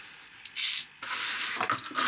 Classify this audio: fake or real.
real